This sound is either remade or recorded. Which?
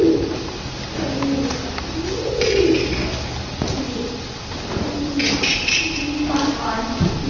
recorded